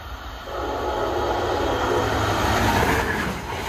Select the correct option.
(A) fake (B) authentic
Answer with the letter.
B